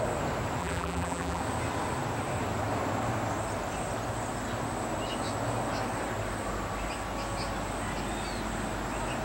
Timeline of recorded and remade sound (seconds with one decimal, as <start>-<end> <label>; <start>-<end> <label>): 0.0-0.6 recorded; 0.6-1.4 remade; 1.4-9.2 recorded